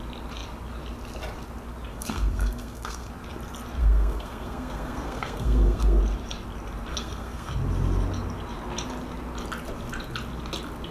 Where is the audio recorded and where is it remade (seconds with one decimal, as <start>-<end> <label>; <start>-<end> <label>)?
0.0-1.9 recorded; 1.9-3.1 remade; 3.1-3.8 recorded; 3.8-6.0 remade; 6.0-6.9 recorded; 6.9-7.5 remade; 7.5-10.9 recorded